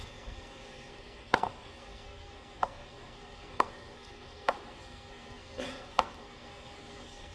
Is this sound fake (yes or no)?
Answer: yes